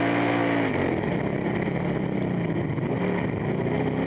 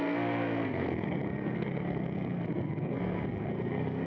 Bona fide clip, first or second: first